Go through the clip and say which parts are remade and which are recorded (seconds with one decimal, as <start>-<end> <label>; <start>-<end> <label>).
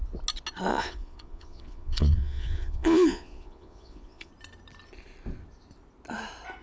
0.0-0.7 recorded; 0.7-4.3 remade; 4.3-6.6 recorded